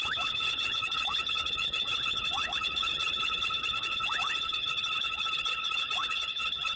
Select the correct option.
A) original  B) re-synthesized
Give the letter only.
B